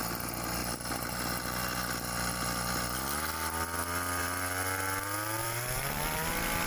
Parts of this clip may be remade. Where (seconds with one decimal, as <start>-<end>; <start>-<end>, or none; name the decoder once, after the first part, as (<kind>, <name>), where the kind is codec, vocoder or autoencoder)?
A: 5.4-6.3 (vocoder, BigVGAN v2)